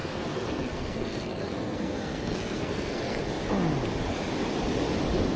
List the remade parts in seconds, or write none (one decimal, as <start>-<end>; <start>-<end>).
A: 0.0-3.2